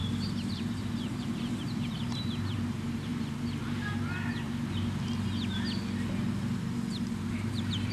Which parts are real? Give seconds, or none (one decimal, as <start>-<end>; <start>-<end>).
0.0-0.5; 3.1-7.3